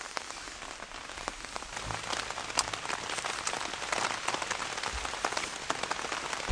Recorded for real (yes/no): yes